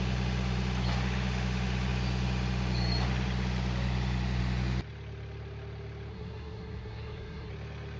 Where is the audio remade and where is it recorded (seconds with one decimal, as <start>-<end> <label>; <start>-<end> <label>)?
0.0-6.1 recorded; 6.1-7.5 remade; 7.5-8.0 recorded